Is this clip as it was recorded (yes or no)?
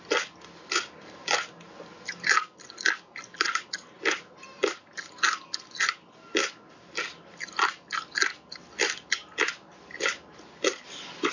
yes